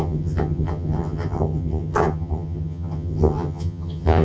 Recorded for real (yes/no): no